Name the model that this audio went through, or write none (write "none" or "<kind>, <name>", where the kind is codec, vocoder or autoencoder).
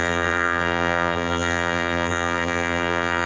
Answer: vocoder, BigVGAN v2